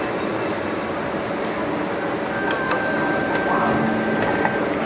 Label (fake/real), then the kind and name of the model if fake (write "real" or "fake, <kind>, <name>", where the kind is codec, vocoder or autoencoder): real